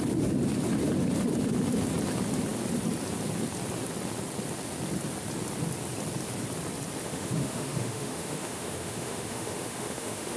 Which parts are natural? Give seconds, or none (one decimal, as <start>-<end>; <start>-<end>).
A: 0.0-7.0